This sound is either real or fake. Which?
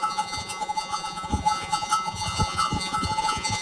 fake